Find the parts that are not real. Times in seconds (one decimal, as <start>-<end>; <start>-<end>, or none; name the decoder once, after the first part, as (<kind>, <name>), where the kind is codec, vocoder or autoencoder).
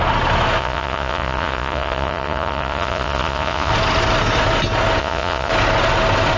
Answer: 0.6-3.7 (vocoder, Vocos); 5.0-5.5